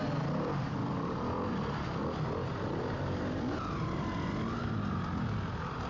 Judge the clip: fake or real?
real